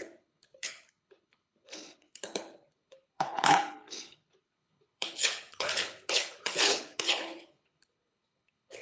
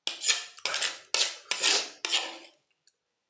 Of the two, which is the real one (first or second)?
second